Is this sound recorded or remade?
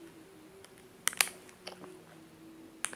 recorded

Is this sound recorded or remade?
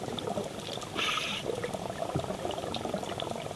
remade